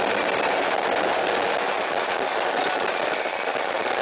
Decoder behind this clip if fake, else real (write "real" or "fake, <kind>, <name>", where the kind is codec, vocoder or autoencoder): real